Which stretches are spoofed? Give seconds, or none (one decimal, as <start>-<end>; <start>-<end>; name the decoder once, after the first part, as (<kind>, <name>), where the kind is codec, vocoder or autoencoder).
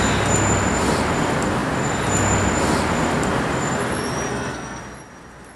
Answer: 4.3-4.8 (codec, SNAC)